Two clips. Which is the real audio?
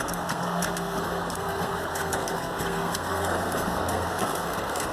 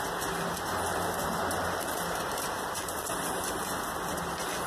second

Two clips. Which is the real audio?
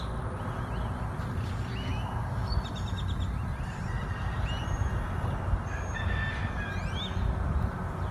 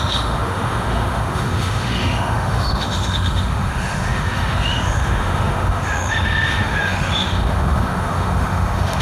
first